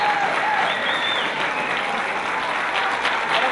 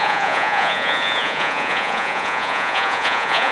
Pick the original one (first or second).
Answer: first